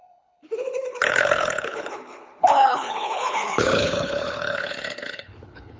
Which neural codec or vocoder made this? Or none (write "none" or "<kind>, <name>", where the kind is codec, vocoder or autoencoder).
codec, HILCodec